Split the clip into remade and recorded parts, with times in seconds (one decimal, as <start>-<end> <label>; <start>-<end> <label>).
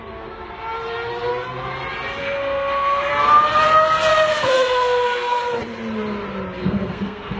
0.0-2.2 recorded; 2.2-3.1 remade; 3.1-4.1 recorded; 4.1-5.4 remade; 5.4-6.6 recorded; 6.6-7.4 remade